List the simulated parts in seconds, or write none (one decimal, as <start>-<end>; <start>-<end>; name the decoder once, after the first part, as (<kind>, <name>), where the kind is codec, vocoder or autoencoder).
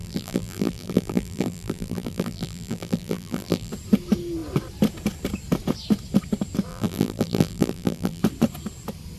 0.0-3.7 (vocoder, BigVGAN v2); 6.7-8.2